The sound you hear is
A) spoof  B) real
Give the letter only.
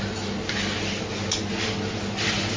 B